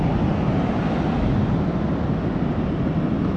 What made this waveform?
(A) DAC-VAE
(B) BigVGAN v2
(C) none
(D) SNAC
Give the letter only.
C